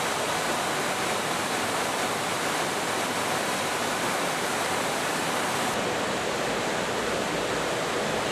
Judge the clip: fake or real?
fake